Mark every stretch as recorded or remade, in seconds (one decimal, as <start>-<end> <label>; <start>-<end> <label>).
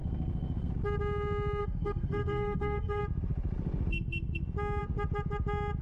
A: 0.0-0.7 remade; 0.7-1.6 recorded; 1.6-3.0 remade; 3.0-5.8 recorded